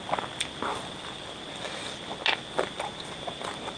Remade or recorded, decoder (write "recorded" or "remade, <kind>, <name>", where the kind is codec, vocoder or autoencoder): recorded